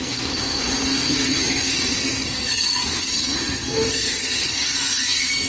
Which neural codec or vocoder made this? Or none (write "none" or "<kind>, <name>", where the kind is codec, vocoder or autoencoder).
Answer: codec, SNAC